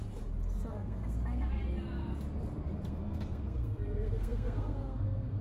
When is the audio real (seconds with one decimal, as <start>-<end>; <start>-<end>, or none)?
0.0-0.7; 1.6-2.9